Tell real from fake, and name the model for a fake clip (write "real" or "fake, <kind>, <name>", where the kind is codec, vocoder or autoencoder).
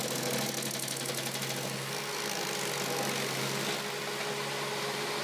real